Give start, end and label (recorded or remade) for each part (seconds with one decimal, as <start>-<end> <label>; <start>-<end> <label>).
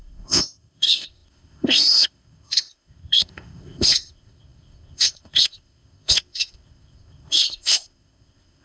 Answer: 0.0-8.6 remade